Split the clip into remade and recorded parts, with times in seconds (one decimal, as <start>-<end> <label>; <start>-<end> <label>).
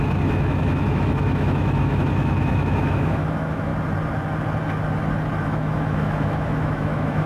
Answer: 0.0-3.7 remade; 3.7-5.4 recorded; 5.4-7.3 remade